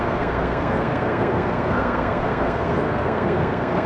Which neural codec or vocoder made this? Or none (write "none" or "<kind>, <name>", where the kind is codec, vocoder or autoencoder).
codec, SNAC